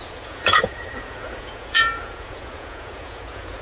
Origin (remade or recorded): remade